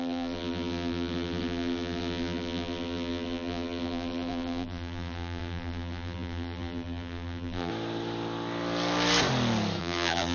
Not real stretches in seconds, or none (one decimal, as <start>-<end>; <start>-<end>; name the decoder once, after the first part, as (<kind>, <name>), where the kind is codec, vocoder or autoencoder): 0.0-7.7 (vocoder, BigVGAN v2); 9.8-10.3